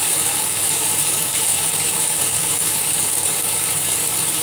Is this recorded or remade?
remade